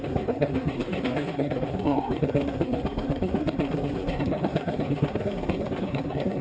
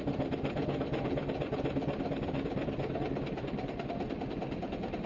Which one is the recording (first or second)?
second